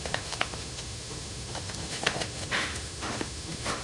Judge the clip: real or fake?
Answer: fake